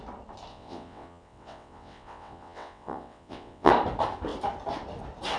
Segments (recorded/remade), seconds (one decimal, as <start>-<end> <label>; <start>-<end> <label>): 0.0-0.5 recorded; 0.5-3.7 remade; 3.7-5.4 recorded